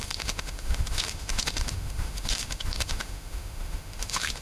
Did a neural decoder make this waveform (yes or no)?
yes